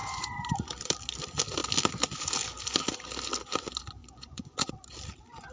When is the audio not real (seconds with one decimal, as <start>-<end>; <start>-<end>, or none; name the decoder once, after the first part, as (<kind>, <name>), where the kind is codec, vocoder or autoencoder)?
0.0-0.5 (vocoder, Vocos); 4.0-4.7